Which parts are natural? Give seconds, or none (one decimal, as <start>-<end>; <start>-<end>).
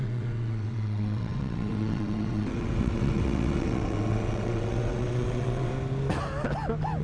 5.7-7.0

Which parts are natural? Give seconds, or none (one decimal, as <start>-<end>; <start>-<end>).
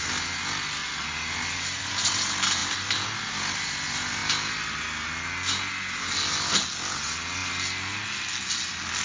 0.0-9.0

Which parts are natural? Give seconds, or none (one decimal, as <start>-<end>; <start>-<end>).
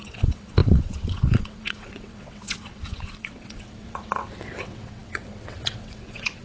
none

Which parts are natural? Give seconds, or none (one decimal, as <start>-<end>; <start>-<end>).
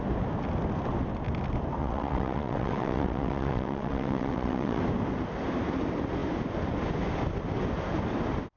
0.0-1.8; 4.8-8.6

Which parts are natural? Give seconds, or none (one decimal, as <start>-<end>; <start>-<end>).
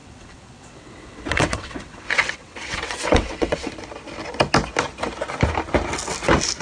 3.7-6.6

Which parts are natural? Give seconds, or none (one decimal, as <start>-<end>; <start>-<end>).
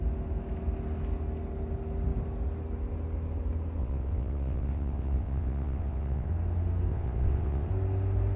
0.0-3.8; 6.3-6.9; 7.7-8.4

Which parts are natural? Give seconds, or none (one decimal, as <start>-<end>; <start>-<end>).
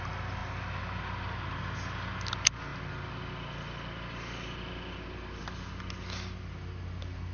0.0-7.3